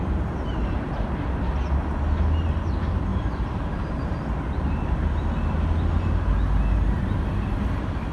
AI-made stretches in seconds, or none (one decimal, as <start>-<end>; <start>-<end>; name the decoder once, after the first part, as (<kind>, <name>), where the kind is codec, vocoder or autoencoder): 3.1-3.8 (vocoder, BigVGAN v2)